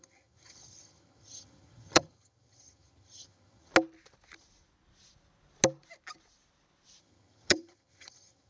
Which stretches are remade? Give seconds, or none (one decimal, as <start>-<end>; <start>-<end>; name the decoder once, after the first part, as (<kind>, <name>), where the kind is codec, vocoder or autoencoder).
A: 0.0-3.7 (vocoder, HiFi-GAN); 7.0-8.5